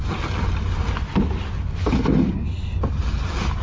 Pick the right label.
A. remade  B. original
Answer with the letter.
B